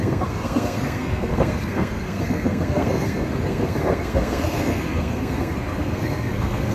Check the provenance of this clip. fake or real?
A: fake